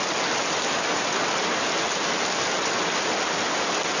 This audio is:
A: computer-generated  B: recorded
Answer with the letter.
B